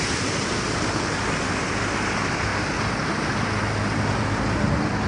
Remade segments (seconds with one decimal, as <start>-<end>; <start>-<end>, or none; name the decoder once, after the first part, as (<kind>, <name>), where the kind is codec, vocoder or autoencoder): none